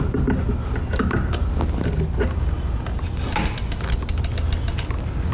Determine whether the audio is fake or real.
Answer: real